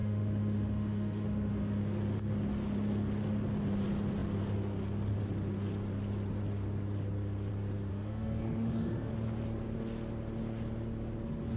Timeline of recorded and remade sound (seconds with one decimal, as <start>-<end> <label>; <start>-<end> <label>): 0.0-1.8 remade; 1.8-7.9 recorded; 7.9-9.1 remade; 9.1-11.6 recorded